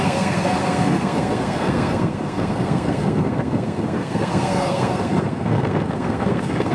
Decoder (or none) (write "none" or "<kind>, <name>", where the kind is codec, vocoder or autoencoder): codec, SNAC